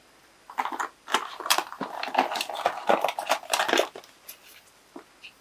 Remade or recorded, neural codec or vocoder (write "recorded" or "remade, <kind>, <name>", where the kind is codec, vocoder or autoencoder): recorded